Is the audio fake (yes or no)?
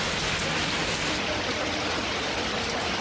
no